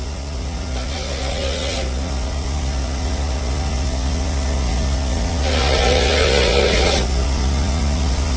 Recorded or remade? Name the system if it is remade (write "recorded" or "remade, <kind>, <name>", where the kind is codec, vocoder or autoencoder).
remade, vocoder, Vocos